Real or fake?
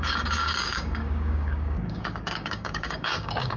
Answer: fake